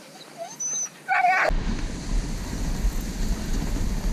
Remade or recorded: recorded